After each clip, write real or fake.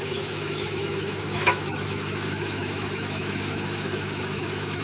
fake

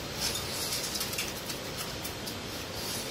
real